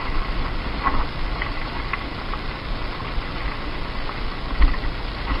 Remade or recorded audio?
recorded